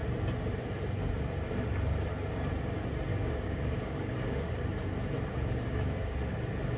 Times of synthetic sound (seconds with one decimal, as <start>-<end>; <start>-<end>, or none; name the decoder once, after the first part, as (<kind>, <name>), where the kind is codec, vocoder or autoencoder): 3.1-4.5 (codec, DAC); 5.3-6.2